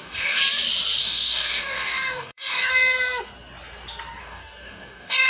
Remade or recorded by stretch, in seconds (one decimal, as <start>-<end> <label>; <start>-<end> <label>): 0.0-0.4 remade; 0.4-1.0 recorded; 1.0-2.7 remade; 2.7-4.2 recorded; 4.2-5.3 remade

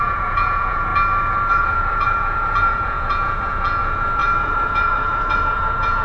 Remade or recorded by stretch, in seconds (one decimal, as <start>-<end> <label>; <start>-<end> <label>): 0.0-0.9 remade; 0.9-1.5 recorded; 1.5-6.0 remade

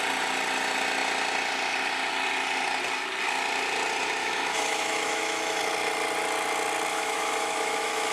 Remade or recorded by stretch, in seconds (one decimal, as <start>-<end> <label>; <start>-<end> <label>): 0.0-4.2 recorded; 4.2-5.6 remade; 5.6-6.9 recorded; 6.9-8.1 remade

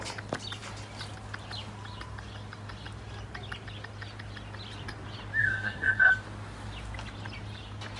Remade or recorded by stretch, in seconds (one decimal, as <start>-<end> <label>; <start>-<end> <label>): 0.0-5.4 recorded; 5.4-6.1 remade; 6.1-8.0 recorded

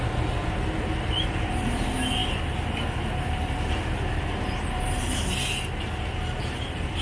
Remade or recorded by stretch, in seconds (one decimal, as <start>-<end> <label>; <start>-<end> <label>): 0.0-7.0 recorded